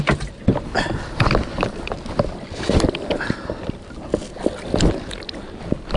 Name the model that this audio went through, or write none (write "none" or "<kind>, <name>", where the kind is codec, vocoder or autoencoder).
none